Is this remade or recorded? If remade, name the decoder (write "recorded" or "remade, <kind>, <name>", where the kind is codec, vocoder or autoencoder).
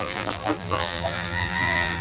remade, vocoder, BigVGAN v2